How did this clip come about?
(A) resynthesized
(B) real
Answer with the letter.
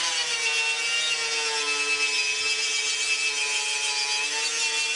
B